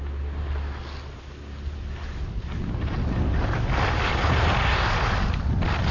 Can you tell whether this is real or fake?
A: real